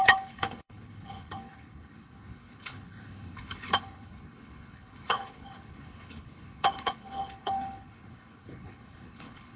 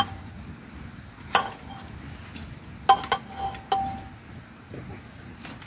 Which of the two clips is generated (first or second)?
first